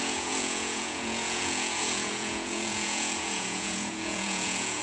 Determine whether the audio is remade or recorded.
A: remade